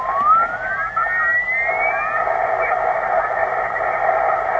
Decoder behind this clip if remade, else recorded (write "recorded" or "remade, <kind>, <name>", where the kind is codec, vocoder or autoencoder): recorded